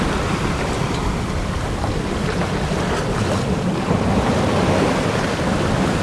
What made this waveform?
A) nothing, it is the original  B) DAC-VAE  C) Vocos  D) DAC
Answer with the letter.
A